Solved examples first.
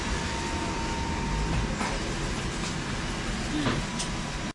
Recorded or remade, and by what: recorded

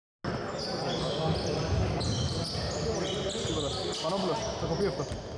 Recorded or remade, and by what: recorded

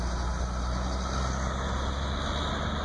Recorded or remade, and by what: recorded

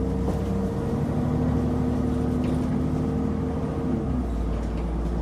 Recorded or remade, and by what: recorded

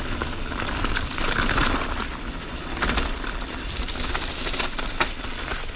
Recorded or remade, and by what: recorded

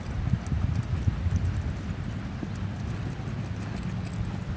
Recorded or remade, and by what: recorded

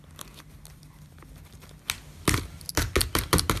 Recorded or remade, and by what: recorded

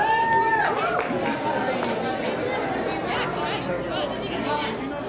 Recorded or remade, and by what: recorded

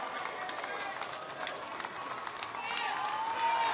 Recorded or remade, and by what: recorded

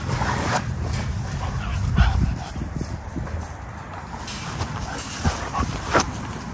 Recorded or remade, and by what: recorded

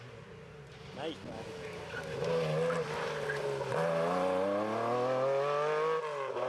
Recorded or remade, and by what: recorded